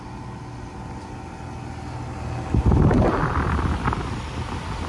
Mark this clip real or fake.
real